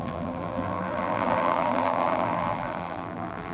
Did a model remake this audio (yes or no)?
yes